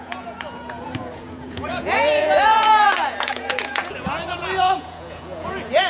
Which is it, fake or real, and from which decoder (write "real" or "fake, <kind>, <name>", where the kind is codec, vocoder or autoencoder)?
fake, vocoder, Vocos